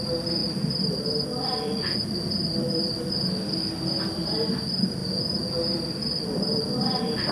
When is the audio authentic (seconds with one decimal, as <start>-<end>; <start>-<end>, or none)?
5.0-5.7